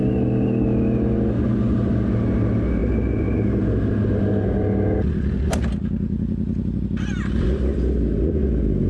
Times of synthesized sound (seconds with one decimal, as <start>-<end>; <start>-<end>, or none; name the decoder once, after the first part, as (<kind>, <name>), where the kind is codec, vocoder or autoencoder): none